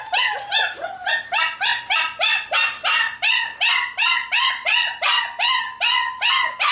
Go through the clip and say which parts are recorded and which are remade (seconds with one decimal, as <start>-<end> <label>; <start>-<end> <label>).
0.0-1.7 recorded; 1.7-5.2 remade; 5.2-6.7 recorded

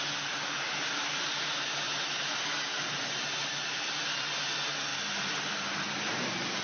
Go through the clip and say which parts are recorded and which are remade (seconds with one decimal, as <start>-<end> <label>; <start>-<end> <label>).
0.0-4.9 recorded; 4.9-6.1 remade; 6.1-6.6 recorded

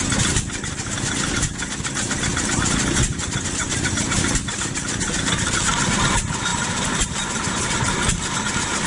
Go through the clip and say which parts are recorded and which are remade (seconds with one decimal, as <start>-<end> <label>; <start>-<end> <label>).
0.0-2.3 recorded; 2.3-5.7 remade; 5.7-6.5 recorded; 6.5-8.3 remade; 8.3-8.9 recorded

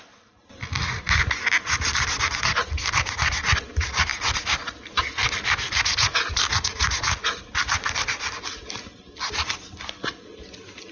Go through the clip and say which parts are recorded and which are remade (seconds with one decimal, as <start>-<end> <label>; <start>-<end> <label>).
0.0-10.9 recorded

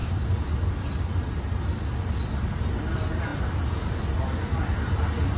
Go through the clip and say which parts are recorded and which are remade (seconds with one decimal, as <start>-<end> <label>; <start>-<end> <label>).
0.0-0.7 remade; 0.7-5.4 recorded